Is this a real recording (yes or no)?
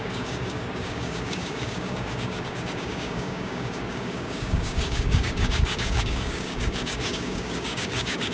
no